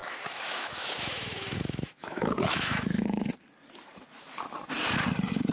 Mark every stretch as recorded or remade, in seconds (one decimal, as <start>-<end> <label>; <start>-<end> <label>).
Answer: 0.0-3.3 remade; 3.3-5.5 recorded